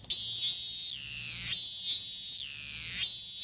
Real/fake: real